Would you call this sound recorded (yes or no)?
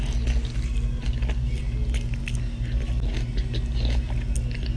yes